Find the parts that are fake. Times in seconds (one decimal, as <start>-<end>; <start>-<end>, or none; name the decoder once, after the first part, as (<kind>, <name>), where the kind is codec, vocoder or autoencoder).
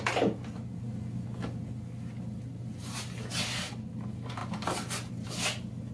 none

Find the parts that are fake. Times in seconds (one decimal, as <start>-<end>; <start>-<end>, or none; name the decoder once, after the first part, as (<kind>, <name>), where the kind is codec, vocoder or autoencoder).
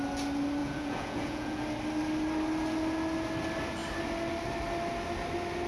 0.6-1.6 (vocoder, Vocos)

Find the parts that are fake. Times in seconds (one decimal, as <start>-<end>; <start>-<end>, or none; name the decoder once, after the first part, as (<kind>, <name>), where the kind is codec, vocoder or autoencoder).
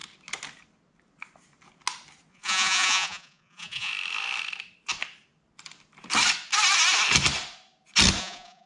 2.3-3.9 (vocoder, Vocos); 8.2-8.7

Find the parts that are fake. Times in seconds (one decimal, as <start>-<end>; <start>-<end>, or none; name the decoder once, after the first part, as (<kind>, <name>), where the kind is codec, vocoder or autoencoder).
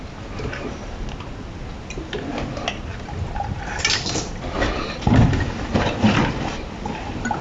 none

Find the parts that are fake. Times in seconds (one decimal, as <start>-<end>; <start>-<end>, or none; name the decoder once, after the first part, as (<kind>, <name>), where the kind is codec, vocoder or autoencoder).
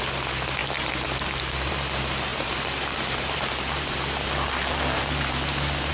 none